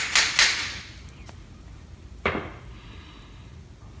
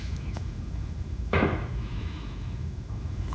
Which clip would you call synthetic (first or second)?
second